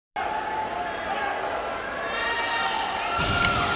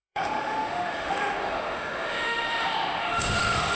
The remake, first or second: second